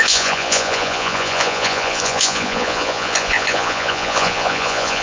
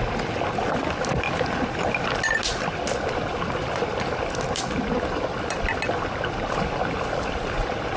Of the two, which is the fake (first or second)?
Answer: first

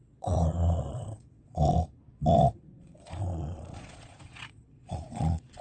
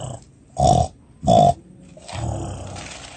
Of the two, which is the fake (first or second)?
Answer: first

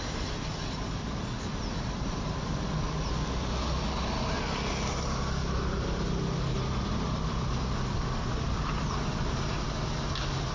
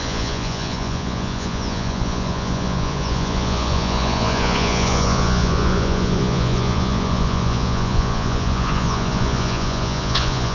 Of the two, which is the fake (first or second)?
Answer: second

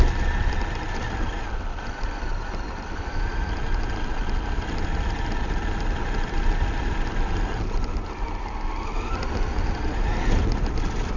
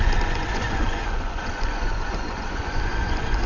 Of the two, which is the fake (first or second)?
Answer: second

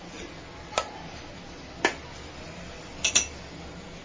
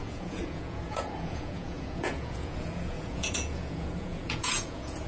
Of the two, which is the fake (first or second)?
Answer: second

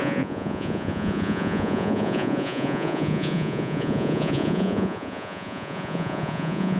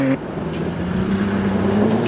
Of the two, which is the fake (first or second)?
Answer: first